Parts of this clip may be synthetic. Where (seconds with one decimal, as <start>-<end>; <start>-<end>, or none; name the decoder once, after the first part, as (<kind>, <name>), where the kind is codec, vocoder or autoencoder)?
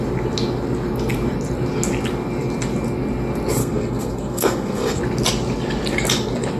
3.6-5.0 (codec, SNAC)